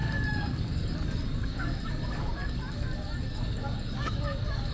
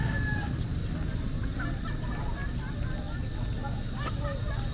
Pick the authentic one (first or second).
second